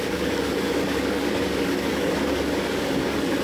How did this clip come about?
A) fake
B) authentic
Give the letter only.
A